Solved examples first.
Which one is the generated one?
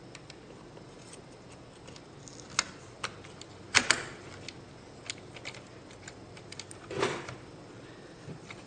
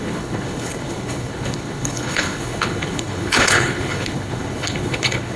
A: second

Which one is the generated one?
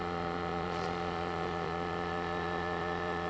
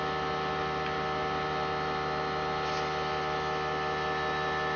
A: first